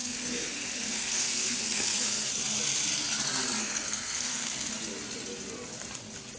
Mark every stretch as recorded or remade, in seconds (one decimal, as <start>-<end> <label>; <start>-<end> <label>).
0.0-2.3 remade; 2.3-3.6 recorded; 3.6-4.7 remade; 4.7-6.4 recorded